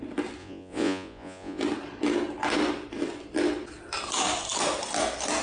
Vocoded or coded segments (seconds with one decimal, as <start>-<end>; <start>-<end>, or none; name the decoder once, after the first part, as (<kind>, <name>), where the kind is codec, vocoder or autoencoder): 0.4-1.6 (vocoder, Vocos)